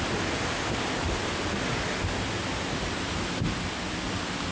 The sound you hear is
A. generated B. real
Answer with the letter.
B